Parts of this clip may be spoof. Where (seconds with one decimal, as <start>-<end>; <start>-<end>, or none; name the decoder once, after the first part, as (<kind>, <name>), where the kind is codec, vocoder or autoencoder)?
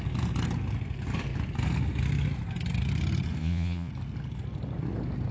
3.4-3.9 (vocoder, Vocos)